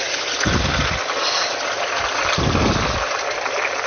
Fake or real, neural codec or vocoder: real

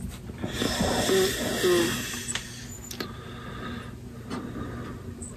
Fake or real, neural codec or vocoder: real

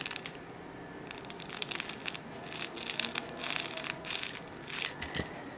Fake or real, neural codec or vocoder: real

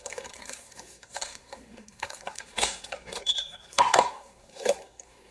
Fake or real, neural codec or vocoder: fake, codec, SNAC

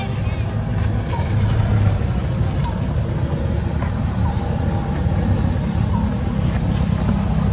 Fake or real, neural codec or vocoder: real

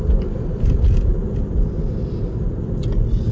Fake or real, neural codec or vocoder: real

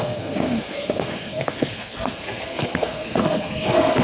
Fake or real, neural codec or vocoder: fake, codec, SNAC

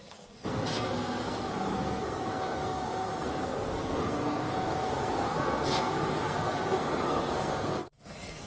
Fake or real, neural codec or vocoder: fake, codec, SNAC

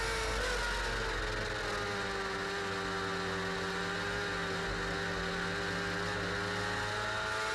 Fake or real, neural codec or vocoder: real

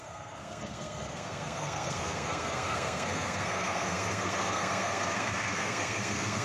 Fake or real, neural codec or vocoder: fake, codec, SNAC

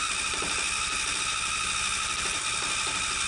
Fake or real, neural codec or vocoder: real